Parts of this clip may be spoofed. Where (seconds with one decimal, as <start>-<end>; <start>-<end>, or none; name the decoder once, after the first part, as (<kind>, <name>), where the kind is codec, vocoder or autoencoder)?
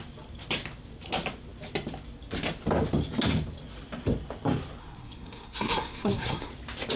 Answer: 4.8-6.5 (codec, SNAC)